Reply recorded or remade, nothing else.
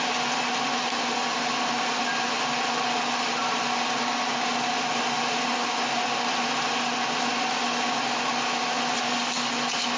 recorded